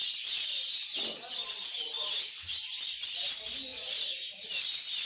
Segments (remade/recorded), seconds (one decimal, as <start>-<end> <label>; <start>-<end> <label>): 0.0-3.7 recorded; 3.7-4.5 remade; 4.5-5.0 recorded